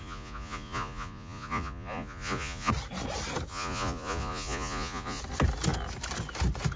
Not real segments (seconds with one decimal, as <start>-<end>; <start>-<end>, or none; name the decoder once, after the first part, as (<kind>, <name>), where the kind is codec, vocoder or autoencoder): 0.0-2.7 (vocoder, Vocos); 3.5-5.2

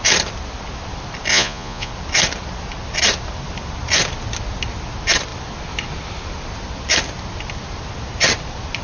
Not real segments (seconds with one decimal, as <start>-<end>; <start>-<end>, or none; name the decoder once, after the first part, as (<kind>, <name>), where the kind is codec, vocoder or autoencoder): 1.3-1.9 (vocoder, Vocos)

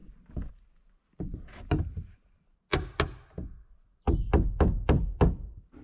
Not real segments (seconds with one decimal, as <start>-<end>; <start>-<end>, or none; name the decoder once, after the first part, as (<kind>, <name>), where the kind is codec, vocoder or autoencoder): none

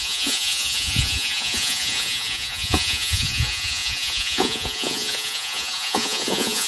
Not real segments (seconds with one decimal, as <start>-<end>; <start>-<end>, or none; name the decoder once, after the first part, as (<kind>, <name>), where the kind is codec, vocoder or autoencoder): 0.0-6.7 (vocoder, Vocos)

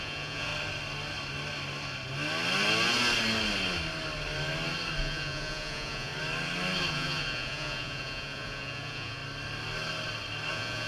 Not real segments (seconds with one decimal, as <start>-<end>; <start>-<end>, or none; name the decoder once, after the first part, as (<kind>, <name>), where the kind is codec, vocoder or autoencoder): 0.0-0.5 (vocoder, Vocos); 5.0-6.1; 6.9-9.2; 10.5-10.9

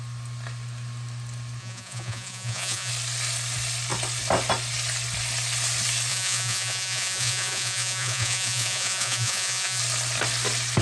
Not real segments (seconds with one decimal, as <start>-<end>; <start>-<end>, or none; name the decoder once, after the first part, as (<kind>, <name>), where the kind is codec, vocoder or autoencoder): 1.6-2.9 (vocoder, Vocos); 6.1-9.8